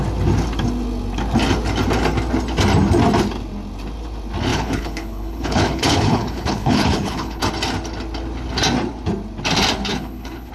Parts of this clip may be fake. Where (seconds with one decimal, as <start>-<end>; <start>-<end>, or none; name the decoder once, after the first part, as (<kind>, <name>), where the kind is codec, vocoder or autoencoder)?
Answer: 4.5-7.4 (codec, HILCodec); 9.9-10.5